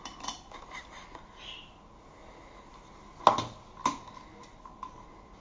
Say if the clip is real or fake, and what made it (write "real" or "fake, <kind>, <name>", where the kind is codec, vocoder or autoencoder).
real